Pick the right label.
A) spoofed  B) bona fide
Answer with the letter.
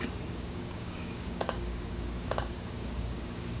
A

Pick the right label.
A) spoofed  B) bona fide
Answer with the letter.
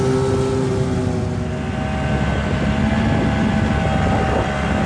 B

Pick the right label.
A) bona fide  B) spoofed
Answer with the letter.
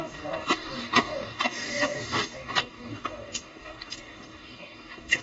B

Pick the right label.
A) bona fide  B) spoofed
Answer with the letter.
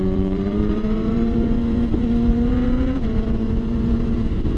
B